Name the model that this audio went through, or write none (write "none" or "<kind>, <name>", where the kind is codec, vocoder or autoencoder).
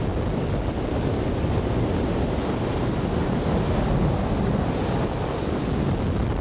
none